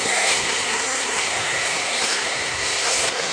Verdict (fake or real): fake